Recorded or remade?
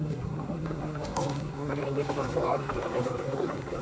remade